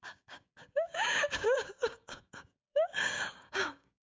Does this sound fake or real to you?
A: fake